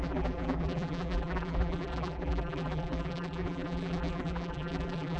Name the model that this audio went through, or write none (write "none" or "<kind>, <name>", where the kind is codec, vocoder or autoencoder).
vocoder, BigVGAN v2